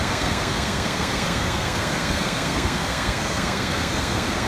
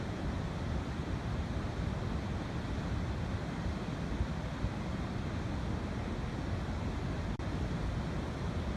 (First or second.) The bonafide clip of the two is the second